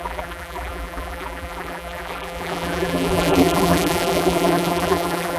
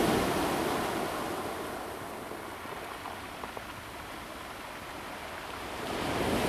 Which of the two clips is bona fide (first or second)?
second